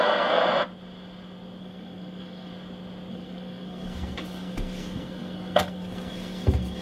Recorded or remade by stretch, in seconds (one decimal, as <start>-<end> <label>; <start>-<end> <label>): 0.0-0.4 remade; 0.4-1.6 recorded; 1.6-2.5 remade; 2.5-3.1 recorded; 3.1-6.8 remade